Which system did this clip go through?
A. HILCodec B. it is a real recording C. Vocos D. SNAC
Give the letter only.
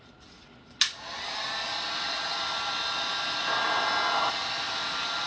B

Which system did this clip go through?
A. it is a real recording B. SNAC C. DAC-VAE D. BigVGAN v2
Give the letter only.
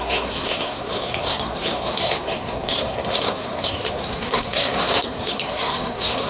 B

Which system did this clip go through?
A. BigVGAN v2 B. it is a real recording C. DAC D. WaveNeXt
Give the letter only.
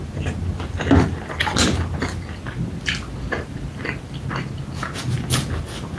B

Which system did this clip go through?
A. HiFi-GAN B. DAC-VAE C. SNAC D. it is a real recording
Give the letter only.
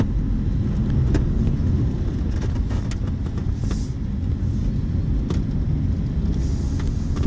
D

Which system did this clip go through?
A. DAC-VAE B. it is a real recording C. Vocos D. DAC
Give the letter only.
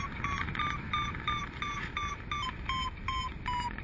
B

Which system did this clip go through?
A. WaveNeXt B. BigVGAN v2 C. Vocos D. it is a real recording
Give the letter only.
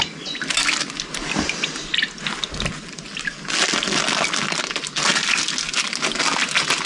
D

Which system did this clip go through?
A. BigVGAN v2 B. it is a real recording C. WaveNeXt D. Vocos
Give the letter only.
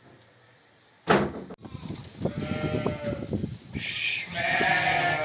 B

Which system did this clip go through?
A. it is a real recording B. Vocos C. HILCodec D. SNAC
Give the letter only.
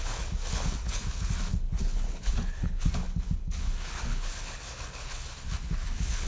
C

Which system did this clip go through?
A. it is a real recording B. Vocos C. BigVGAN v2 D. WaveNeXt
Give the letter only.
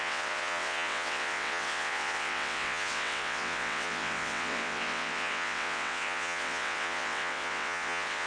D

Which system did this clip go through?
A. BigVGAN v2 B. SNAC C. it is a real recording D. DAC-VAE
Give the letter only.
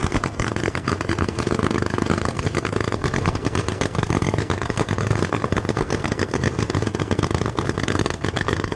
B